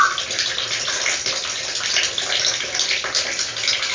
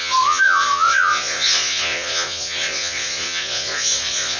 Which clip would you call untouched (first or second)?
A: first